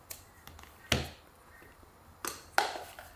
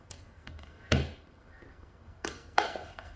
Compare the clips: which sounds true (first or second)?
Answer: first